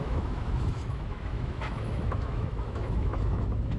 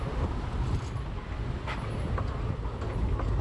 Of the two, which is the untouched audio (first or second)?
second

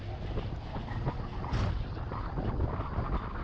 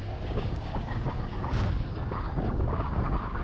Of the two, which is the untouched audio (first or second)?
first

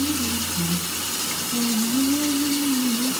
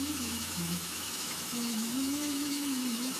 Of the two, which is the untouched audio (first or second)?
first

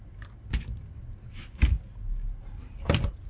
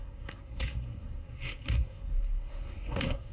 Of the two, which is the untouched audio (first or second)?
first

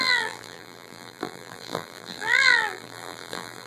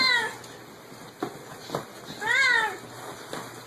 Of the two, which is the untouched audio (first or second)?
second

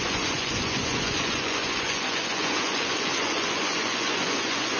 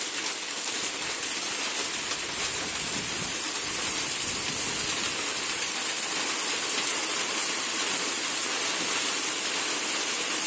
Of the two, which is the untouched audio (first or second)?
second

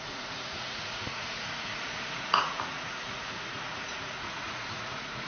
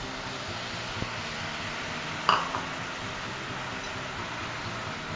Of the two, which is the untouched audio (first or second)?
second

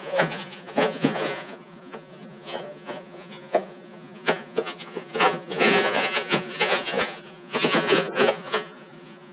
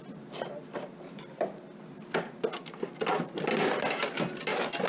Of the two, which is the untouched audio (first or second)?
second